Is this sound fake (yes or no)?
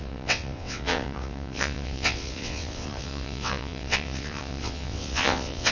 yes